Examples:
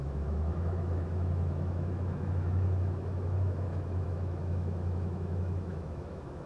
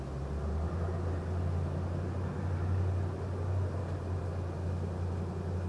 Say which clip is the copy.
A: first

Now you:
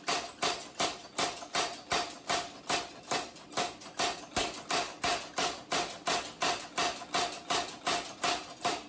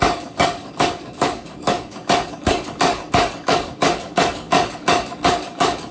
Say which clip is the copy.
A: second